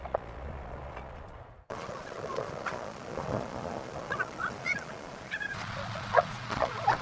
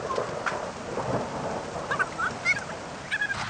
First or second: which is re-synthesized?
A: first